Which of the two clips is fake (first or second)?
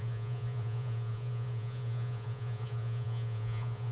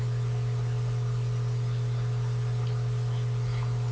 first